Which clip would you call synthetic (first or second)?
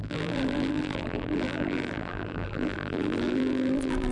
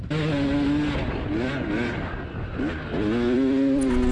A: first